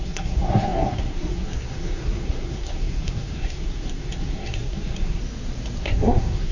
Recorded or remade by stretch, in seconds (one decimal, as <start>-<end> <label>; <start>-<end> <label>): 0.0-5.2 remade; 5.2-5.8 recorded; 5.8-6.5 remade